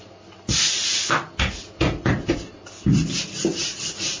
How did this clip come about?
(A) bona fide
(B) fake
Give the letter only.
A